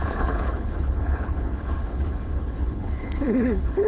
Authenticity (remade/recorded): remade